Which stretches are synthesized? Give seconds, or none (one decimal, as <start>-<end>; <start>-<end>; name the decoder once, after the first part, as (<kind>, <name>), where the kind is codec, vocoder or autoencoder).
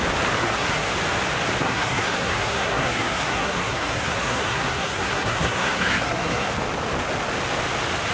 0.4-0.9 (codec, SNAC); 1.6-6.5